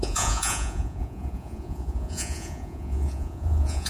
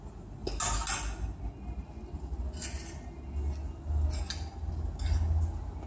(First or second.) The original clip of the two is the second